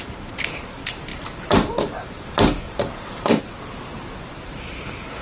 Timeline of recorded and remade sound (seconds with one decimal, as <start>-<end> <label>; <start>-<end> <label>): 0.0-5.2 remade